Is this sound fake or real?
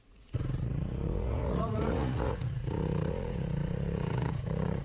fake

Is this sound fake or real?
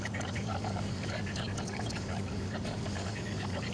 fake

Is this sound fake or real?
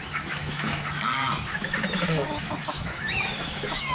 fake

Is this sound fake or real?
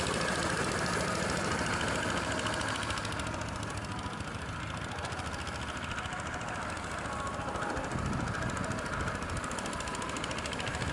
real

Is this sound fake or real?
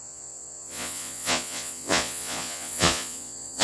fake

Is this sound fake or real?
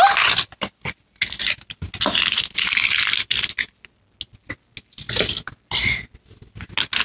real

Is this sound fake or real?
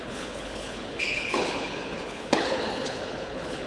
fake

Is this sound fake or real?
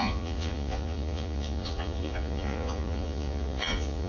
fake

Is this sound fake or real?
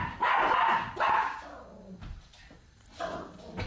real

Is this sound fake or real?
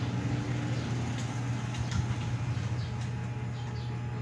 real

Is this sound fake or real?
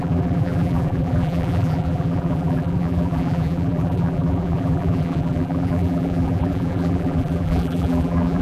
fake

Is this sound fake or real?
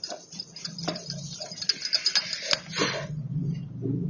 real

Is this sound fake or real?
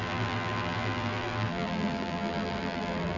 fake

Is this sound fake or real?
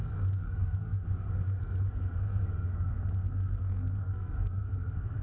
fake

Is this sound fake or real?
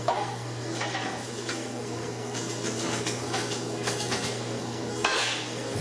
fake